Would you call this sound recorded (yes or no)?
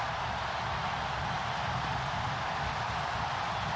yes